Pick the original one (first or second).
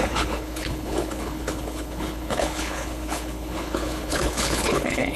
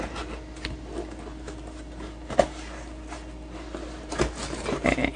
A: second